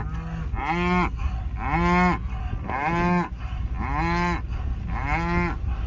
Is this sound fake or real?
real